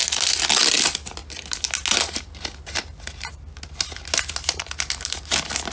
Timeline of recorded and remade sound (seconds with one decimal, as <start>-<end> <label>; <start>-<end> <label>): 0.0-5.7 recorded